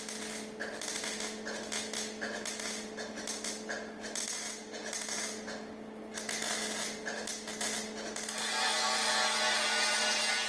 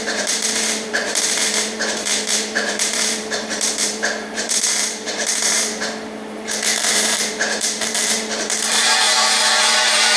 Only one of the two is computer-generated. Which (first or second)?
second